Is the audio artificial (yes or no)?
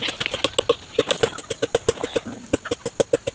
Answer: no